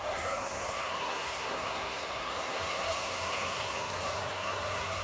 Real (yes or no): no